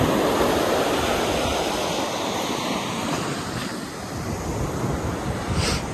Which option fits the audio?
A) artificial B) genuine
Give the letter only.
B